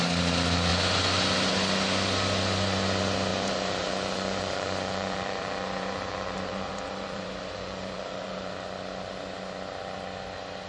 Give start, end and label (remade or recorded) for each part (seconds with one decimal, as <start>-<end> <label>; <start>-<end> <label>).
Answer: 0.0-3.3 recorded; 3.3-8.5 remade; 8.5-10.7 recorded